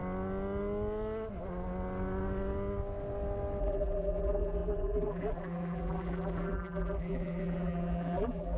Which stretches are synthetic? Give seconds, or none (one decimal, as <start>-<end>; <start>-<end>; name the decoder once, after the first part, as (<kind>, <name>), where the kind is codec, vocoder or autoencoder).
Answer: 3.6-8.6 (vocoder, BigVGAN v2)